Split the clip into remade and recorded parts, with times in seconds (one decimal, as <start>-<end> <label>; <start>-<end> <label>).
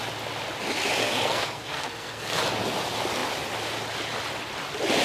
0.0-1.0 recorded; 1.0-2.4 remade; 2.4-5.0 recorded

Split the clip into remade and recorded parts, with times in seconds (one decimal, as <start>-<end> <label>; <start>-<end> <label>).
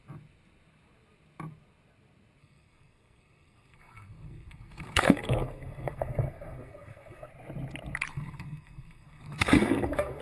0.0-2.4 recorded; 2.4-7.3 remade; 7.3-8.1 recorded; 8.1-10.2 remade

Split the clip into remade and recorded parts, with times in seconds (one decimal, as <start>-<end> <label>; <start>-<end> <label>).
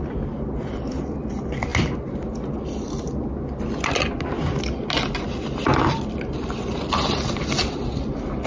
0.0-8.5 recorded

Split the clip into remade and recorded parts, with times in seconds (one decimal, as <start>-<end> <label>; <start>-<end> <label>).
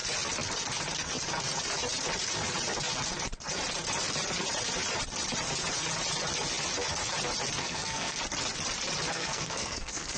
0.0-7.6 recorded; 7.6-8.2 remade; 8.2-9.1 recorded; 9.1-10.2 remade